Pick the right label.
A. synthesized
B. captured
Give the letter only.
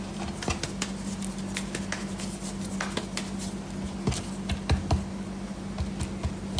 B